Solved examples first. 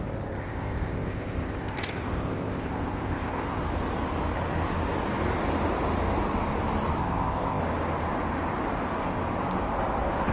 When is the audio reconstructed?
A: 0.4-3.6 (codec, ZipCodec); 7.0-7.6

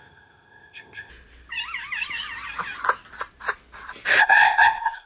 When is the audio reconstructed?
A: 0.0-1.1 (codec, ZipCodec); 4.2-5.1

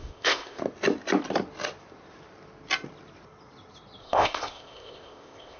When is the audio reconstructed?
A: 0.0-0.6 (codec, ZipCodec); 4.0-5.6